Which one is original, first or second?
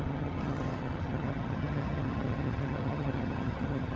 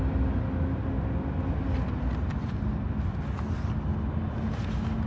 second